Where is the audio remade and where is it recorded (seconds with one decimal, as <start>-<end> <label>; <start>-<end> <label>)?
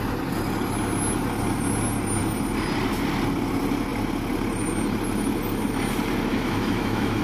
0.0-6.3 recorded; 6.3-7.2 remade